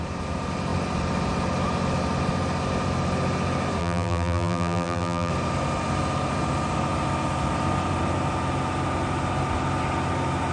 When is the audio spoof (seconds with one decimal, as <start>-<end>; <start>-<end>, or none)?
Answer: 3.8-5.3